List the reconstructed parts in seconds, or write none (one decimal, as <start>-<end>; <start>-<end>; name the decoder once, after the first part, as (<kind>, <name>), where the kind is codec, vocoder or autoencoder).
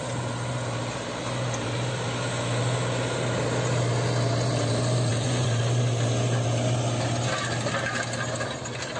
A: 5.1-5.6 (vocoder, Vocos)